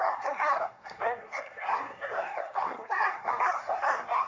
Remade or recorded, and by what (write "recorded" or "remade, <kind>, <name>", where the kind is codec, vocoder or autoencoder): remade, codec, SNAC